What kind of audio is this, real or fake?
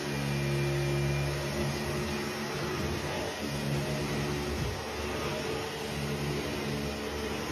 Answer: real